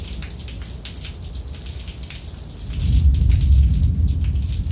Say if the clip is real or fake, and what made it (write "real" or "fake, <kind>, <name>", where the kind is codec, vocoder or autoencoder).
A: real